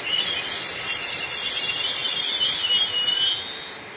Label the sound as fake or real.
real